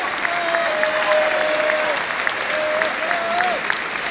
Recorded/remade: recorded